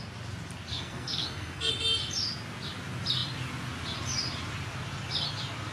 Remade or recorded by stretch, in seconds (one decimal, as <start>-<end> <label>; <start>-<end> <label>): 0.0-0.7 recorded; 0.7-1.7 remade; 1.7-5.7 recorded